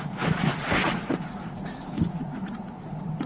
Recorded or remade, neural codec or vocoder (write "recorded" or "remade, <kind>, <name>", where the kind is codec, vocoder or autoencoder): remade, vocoder, Vocos